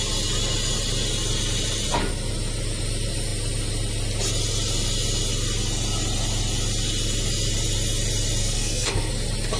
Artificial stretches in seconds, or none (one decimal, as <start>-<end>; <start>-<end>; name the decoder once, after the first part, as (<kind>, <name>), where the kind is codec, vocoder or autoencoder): 8.4-9.1 (codec, SNAC)